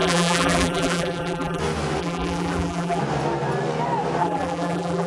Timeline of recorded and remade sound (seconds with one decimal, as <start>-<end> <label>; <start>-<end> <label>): 0.0-1.6 remade; 1.6-2.0 recorded; 2.0-3.0 remade; 3.0-4.2 recorded; 4.2-5.1 remade